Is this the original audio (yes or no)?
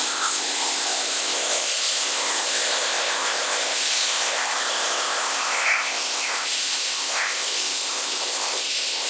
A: no